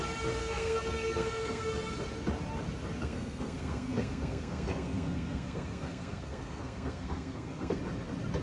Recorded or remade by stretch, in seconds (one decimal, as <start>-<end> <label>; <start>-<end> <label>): 0.0-0.4 recorded; 0.4-1.9 remade; 1.9-3.0 recorded; 3.0-7.8 remade; 7.8-8.4 recorded

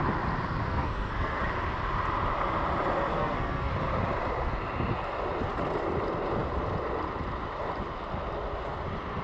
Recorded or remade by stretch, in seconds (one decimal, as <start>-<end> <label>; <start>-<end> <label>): 0.0-0.7 recorded; 0.7-1.4 remade; 1.4-3.1 recorded; 3.1-3.7 remade; 3.7-9.2 recorded

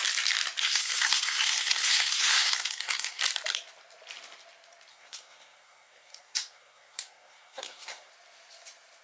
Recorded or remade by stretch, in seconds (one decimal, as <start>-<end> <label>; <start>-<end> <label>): 0.0-0.6 recorded; 0.6-3.2 remade; 3.2-4.9 recorded; 4.9-8.1 remade; 8.1-9.0 recorded